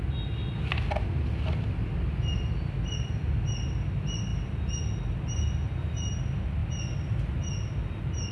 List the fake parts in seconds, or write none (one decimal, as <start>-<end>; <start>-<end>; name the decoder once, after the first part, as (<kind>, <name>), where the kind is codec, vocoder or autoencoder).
none

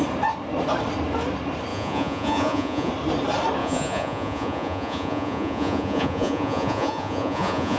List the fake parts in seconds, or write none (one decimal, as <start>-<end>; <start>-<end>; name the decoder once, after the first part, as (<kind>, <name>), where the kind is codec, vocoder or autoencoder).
1.7-2.9 (vocoder, Vocos); 3.6-7.8

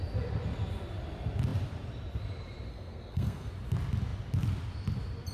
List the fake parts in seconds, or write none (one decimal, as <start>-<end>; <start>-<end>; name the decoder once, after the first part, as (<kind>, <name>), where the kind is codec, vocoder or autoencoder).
2.7-3.5 (codec, SNAC)

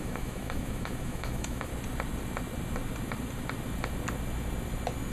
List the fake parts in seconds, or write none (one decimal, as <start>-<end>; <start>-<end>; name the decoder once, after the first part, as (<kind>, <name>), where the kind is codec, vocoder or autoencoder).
0.0-1.7 (autoencoder, DAC-VAE)

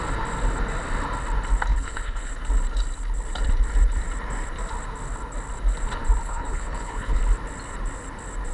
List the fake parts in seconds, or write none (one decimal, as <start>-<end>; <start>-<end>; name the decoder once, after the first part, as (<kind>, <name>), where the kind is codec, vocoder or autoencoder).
1.7-2.3 (codec, HILCodec); 6.2-7.2

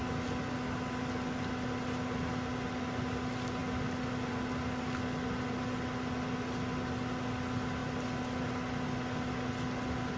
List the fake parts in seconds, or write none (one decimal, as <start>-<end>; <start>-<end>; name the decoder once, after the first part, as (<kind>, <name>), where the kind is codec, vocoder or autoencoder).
none

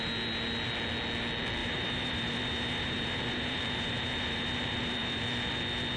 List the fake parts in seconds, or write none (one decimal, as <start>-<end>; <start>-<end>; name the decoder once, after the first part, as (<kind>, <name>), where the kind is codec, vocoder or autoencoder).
1.6-5.2 (vocoder, BigVGAN v2)